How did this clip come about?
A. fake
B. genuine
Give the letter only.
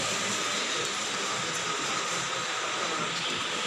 B